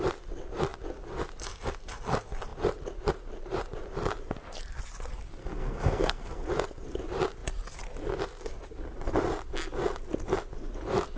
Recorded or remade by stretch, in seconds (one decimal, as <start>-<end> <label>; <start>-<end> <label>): 0.0-5.4 recorded; 5.4-6.5 remade; 6.5-11.2 recorded